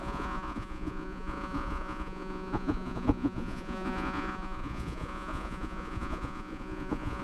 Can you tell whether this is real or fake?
fake